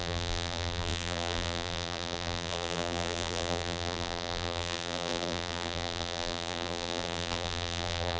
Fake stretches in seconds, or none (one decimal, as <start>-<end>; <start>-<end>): 0.0-8.2